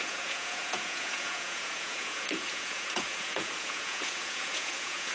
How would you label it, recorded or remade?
remade